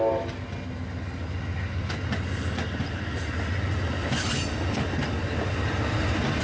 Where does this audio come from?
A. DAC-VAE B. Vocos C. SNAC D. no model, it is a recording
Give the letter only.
D